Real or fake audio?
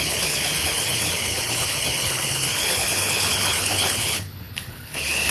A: fake